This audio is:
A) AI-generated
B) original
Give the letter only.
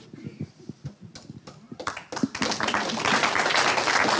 B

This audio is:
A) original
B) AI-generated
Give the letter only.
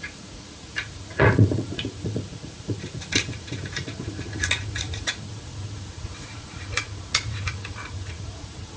B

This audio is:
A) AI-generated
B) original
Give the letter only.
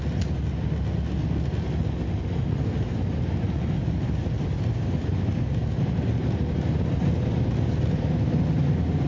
B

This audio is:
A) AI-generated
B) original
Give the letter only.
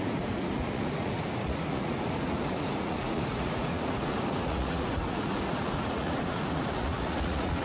A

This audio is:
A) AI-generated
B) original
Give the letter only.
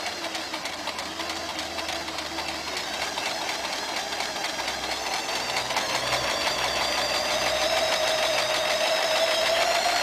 B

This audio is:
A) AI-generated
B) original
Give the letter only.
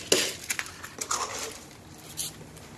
B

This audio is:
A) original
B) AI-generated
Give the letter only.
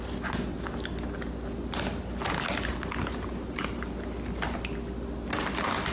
A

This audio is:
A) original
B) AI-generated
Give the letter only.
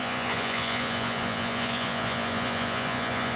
B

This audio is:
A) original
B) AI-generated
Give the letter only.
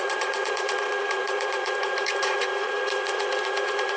B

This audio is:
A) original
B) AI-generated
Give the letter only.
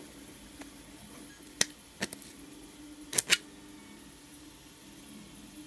A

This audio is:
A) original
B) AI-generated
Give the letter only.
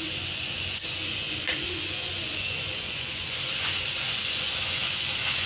B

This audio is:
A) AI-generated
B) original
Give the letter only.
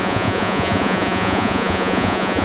A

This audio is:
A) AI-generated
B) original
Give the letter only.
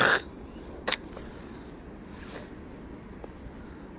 B